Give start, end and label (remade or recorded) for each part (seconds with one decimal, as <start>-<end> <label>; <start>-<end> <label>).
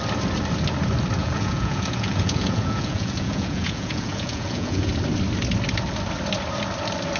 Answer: 0.0-1.2 recorded; 1.2-4.9 remade; 4.9-7.2 recorded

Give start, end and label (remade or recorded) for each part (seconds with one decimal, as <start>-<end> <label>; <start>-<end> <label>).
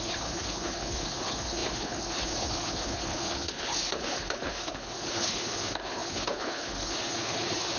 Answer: 0.0-7.8 remade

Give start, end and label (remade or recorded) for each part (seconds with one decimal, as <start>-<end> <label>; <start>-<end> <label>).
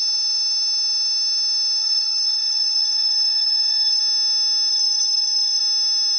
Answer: 0.0-1.8 recorded; 1.8-4.0 remade; 4.0-4.7 recorded; 4.7-5.6 remade; 5.6-6.2 recorded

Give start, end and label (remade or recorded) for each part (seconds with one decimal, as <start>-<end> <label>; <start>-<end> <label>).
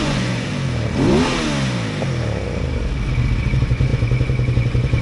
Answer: 0.0-0.5 remade; 0.5-3.5 recorded; 3.5-5.0 remade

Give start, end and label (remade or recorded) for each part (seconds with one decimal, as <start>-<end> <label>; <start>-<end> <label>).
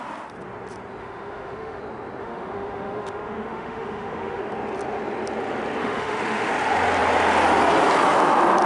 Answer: 0.0-1.0 recorded; 1.0-1.8 remade; 1.8-2.2 recorded; 2.2-4.4 remade; 4.4-5.8 recorded; 5.8-6.5 remade; 6.5-8.7 recorded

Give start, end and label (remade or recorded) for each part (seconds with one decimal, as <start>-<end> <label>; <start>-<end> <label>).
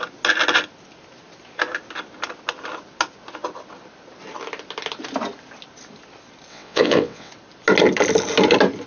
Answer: 0.0-6.5 recorded; 6.5-7.3 remade; 7.3-8.9 recorded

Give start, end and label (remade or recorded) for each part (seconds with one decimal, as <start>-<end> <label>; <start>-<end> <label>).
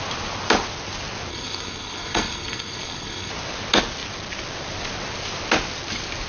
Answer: 0.0-1.3 recorded; 1.3-3.3 remade; 3.3-6.3 recorded